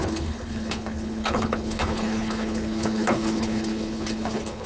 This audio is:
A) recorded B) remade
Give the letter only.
B